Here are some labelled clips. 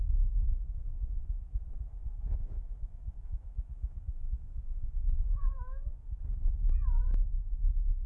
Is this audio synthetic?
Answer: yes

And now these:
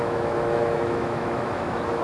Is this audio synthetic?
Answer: yes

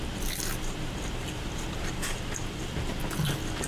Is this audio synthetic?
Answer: no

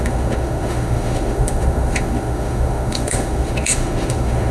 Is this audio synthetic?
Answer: yes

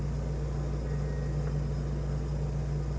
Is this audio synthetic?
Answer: no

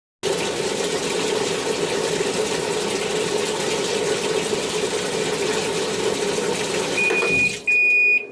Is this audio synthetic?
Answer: no